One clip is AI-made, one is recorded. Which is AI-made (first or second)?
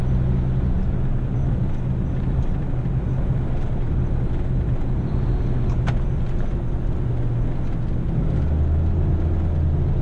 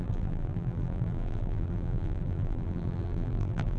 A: second